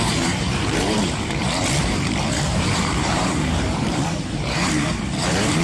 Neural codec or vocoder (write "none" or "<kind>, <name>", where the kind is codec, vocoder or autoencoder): vocoder, BigVGAN v2